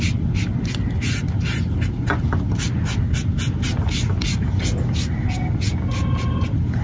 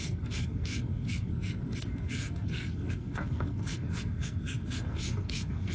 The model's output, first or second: second